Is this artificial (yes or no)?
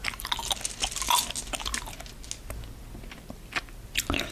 no